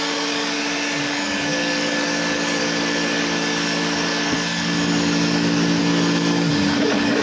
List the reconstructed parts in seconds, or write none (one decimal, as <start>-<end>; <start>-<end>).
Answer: 0.0-7.2